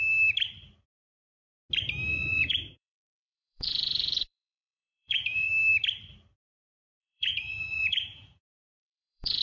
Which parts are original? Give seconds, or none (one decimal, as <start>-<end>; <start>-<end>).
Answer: 0.0-2.1; 5.5-7.0